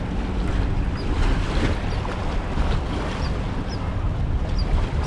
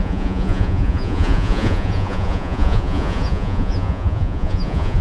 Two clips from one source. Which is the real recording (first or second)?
first